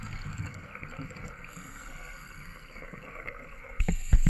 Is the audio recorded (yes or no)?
no